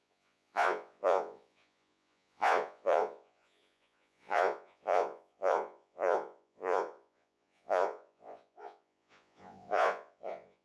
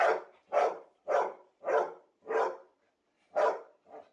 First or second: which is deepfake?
first